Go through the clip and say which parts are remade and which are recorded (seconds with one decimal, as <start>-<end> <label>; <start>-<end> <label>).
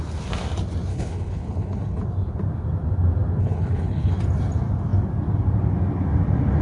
0.0-0.9 recorded; 0.9-2.0 remade; 2.0-3.4 recorded; 3.4-4.1 remade; 4.1-6.6 recorded